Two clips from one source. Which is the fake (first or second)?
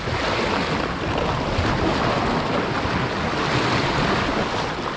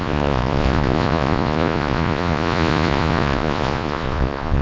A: second